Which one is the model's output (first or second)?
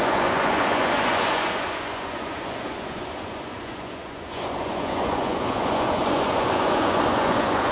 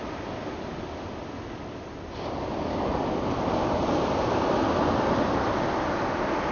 first